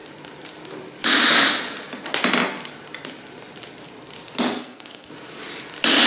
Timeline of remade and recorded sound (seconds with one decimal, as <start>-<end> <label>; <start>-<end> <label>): 0.0-4.6 recorded; 4.6-5.1 remade; 5.1-6.1 recorded